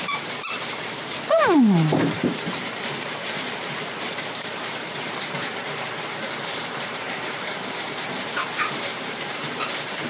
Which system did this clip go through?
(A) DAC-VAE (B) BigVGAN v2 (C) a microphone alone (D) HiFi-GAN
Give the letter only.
B